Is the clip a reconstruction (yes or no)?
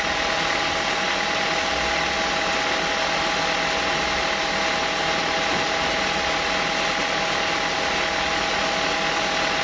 no